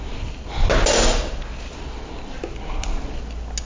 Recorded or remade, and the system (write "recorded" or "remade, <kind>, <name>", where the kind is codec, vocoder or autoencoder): recorded